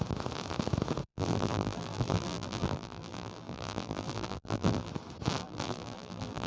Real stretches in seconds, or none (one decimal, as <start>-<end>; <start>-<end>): 0.0-1.1; 4.9-5.4